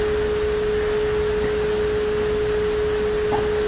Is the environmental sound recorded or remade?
recorded